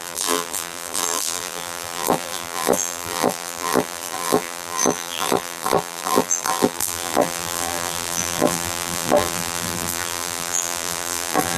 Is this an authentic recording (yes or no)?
no